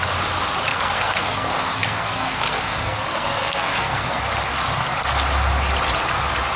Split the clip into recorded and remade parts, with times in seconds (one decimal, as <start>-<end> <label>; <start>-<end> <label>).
0.0-0.7 recorded; 0.7-4.2 remade; 4.2-6.6 recorded